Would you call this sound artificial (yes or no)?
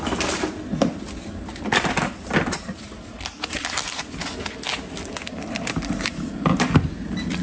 no